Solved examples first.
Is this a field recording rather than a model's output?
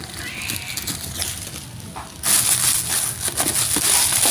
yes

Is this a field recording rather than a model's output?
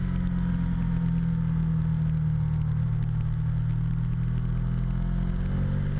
yes